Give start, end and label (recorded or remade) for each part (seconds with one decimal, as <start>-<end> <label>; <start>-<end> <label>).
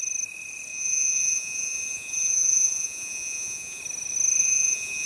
0.0-0.7 recorded; 0.7-3.8 remade; 3.8-4.4 recorded; 4.4-5.1 remade